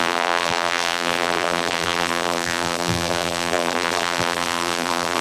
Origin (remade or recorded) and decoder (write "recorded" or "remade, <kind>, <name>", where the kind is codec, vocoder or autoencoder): remade, vocoder, BigVGAN v2